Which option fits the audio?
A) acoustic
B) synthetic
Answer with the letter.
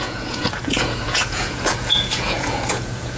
B